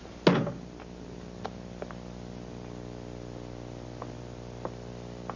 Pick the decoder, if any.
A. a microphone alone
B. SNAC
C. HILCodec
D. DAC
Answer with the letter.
A